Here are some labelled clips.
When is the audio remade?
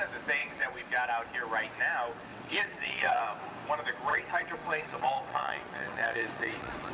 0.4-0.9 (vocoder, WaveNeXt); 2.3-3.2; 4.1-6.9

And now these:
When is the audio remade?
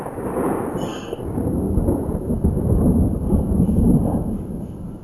0.0-0.9 (vocoder, BigVGAN v2); 2.7-5.0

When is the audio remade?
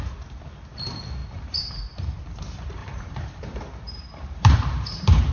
1.2-2.2 (vocoder, BigVGAN v2); 2.8-5.3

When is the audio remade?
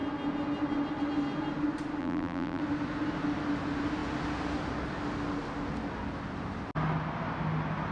2.0-2.6 (vocoder, BigVGAN v2)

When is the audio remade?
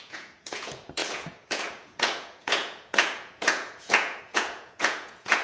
0.0-5.4 (vocoder, Vocos)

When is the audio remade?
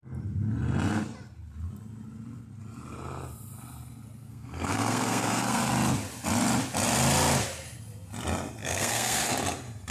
4.2-5.7 (codec, SNAC); 8.6-9.3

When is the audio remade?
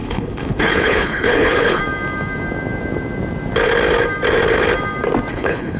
0.0-1.8 (codec, HILCodec); 5.3-5.8